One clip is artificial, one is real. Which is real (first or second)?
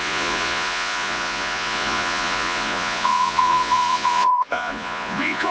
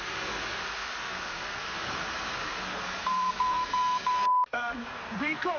second